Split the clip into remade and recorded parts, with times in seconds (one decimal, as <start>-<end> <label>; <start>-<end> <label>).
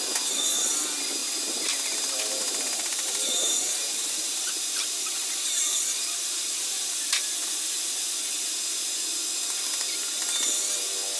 0.0-1.2 recorded; 1.2-6.5 remade; 6.5-11.2 recorded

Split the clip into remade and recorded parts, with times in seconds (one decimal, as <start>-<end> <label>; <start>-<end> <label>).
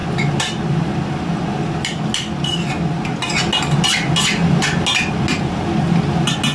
0.0-6.5 recorded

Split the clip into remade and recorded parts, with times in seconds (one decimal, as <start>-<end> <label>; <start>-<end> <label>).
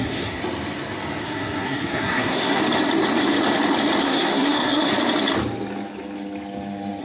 0.0-0.4 remade; 0.4-1.2 recorded; 1.2-2.6 remade; 2.6-4.0 recorded; 4.0-4.9 remade; 4.9-7.0 recorded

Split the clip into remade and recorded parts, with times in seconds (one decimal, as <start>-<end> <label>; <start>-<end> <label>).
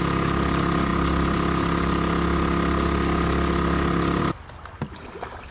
0.0-5.5 recorded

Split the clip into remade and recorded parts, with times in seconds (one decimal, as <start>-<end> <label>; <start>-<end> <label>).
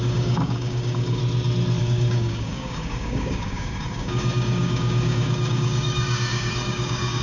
0.0-1.2 remade; 1.2-1.8 recorded; 1.8-7.2 remade